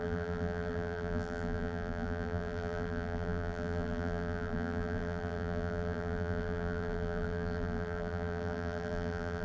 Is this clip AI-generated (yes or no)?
yes